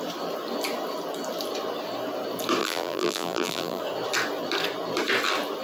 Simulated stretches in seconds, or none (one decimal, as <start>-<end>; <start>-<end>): 2.6-3.8